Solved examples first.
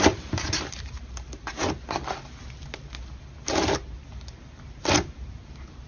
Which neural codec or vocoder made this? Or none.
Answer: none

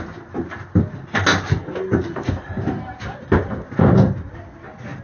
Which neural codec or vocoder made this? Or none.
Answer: none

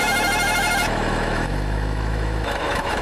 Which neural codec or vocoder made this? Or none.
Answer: autoencoder, DAC-VAE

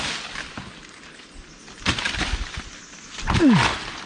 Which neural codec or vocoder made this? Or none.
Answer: none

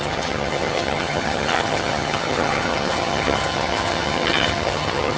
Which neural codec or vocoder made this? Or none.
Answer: vocoder, HiFi-GAN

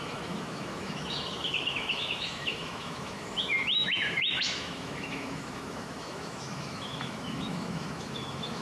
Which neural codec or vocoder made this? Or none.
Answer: autoencoder, DAC-VAE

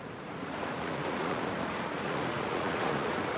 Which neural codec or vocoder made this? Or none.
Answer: vocoder, Vocos